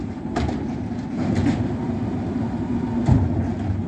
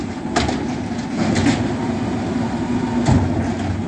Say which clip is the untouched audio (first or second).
second